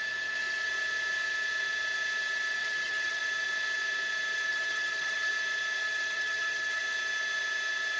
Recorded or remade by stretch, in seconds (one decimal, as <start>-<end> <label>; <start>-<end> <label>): 0.0-2.6 recorded; 2.6-3.2 remade; 3.2-4.5 recorded; 4.5-5.3 remade; 5.3-5.8 recorded; 5.8-6.8 remade; 6.8-8.0 recorded